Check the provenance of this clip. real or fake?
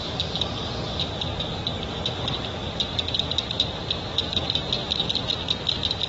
real